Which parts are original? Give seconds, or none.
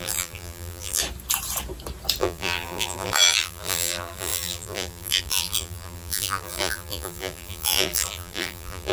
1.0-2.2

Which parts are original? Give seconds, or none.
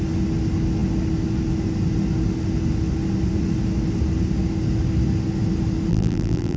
0.0-5.9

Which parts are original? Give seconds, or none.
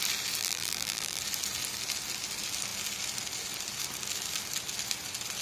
0.0-0.4; 1.2-5.4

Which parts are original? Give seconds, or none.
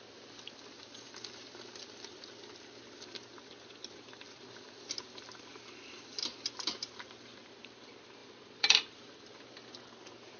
0.0-8.2; 9.8-10.4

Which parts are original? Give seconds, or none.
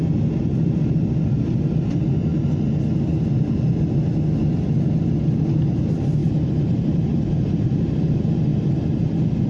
0.0-6.2; 8.1-9.5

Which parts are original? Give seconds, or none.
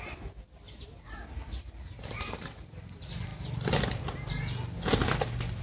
0.0-5.6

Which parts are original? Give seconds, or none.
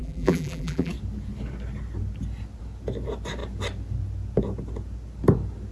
0.9-5.7